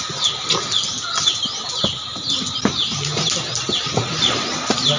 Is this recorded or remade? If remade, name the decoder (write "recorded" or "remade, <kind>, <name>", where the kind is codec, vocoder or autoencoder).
recorded